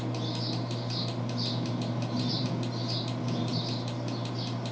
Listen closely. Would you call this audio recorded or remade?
recorded